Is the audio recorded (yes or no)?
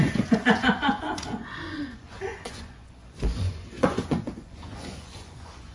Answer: no